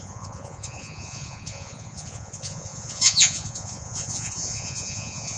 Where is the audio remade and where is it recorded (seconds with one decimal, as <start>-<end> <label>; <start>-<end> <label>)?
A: 0.0-5.4 remade